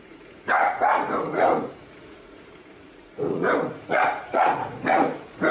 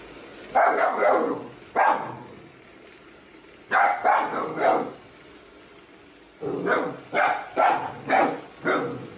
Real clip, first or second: second